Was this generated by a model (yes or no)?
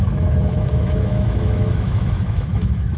yes